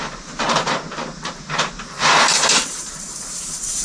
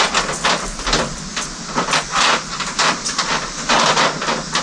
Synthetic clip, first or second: first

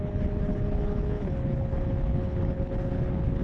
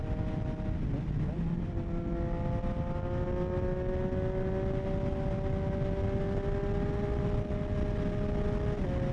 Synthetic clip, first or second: first